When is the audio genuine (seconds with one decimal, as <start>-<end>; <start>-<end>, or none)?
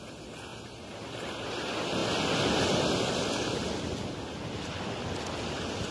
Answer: 0.0-5.9